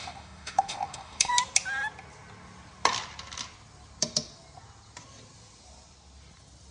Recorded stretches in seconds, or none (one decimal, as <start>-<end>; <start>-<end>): 1.3-6.7